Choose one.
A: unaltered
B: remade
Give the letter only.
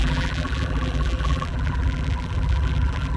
B